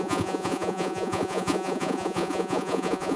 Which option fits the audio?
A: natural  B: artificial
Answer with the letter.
B